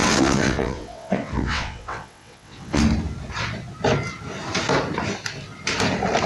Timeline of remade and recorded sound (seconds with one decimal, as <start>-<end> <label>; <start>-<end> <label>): 0.0-2.8 remade; 2.8-6.3 recorded